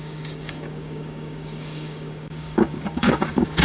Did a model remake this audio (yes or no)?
yes